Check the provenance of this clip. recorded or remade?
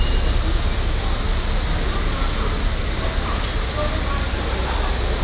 recorded